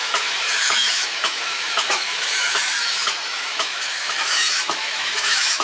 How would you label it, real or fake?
fake